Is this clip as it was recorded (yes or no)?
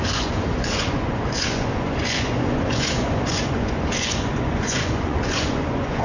no